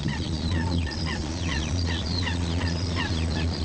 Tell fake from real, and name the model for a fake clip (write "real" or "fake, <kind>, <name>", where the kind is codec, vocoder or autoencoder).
fake, vocoder, Vocos